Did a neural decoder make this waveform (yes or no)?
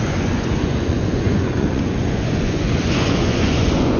yes